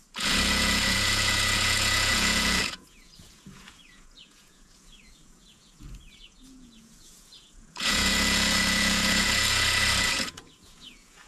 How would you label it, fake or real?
fake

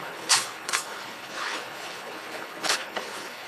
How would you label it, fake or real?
fake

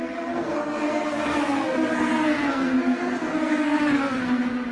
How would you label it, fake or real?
fake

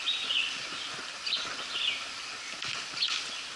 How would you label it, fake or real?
real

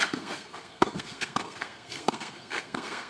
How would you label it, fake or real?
fake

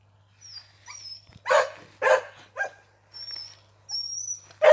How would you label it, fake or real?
real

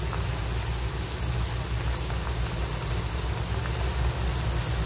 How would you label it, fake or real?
real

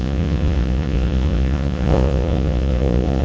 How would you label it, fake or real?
fake